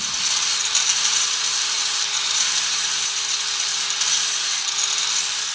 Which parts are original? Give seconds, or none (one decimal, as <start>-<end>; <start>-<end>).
0.0-0.6; 3.2-3.7; 4.5-5.5